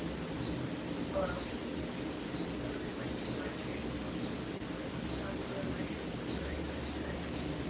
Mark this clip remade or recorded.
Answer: recorded